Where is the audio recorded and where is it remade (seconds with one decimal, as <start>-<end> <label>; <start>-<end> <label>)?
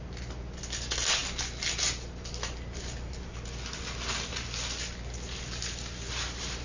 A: 0.0-6.6 recorded